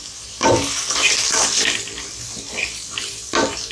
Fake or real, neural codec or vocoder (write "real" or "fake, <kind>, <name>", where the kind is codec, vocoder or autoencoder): real